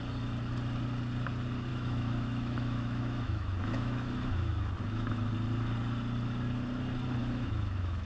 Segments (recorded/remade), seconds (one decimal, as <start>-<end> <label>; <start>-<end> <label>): 0.0-1.7 recorded; 1.7-5.3 remade; 5.3-7.2 recorded; 7.2-8.1 remade